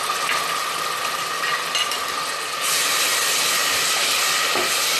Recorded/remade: recorded